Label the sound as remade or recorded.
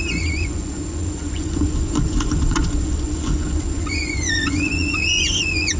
remade